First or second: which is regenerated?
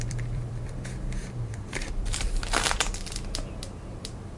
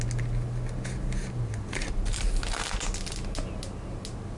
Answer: first